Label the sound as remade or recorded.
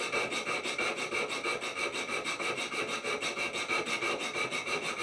recorded